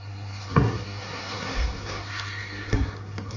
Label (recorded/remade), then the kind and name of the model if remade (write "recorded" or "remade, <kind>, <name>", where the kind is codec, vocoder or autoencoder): remade, codec, SNAC